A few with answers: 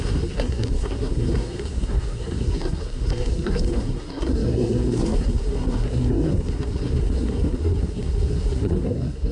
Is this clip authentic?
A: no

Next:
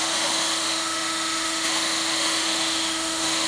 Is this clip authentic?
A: no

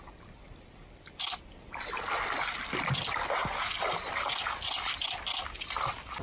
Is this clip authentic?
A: yes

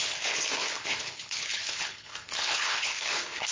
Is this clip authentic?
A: no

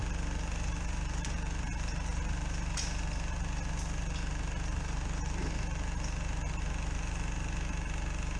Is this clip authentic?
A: yes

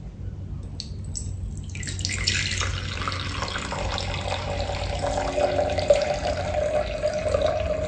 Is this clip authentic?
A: yes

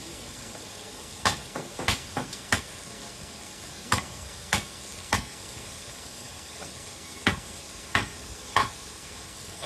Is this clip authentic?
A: no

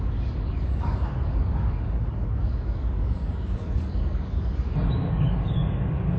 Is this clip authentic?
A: no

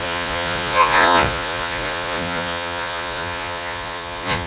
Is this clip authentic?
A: no